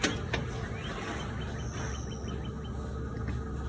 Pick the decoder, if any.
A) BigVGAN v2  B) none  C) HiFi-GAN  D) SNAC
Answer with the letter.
B